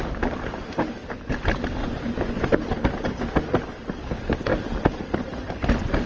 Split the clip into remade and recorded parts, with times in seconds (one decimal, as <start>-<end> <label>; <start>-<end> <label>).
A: 0.0-1.8 recorded; 1.8-2.4 remade; 2.4-6.1 recorded